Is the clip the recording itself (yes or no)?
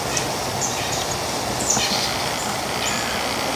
yes